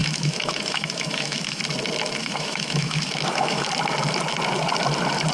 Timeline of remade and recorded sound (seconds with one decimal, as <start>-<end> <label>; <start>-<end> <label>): 0.0-1.6 remade; 1.6-2.2 recorded; 2.2-3.7 remade; 3.7-5.3 recorded